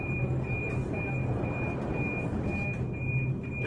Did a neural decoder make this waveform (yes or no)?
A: yes